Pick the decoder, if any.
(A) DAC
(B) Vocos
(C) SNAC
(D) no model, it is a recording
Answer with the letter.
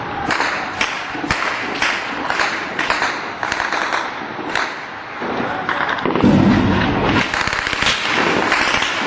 D